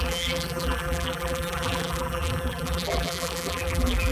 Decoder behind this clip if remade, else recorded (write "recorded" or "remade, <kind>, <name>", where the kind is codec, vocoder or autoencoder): remade, vocoder, BigVGAN v2